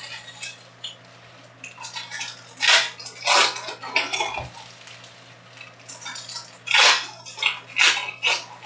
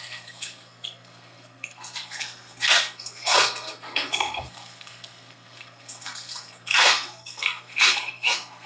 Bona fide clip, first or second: first